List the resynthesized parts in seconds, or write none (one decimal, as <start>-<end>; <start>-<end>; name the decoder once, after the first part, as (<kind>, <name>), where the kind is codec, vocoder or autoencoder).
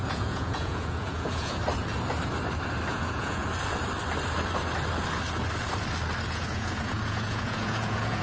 0.0-1.6 (vocoder, Vocos); 2.9-3.4; 6.3-8.2